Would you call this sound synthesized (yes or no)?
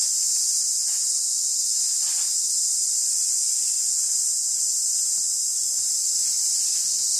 no